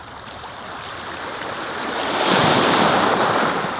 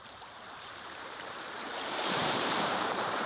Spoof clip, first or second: second